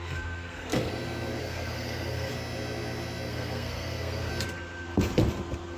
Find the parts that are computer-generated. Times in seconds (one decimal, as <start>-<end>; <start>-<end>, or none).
0.0-0.9; 1.4-2.3; 3.3-4.3